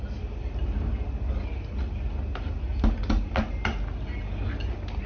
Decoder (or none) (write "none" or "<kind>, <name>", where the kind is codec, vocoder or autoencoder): none